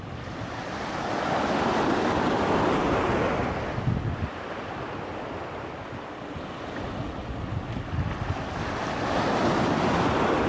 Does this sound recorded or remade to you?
recorded